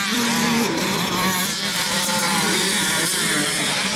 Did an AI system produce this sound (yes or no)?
yes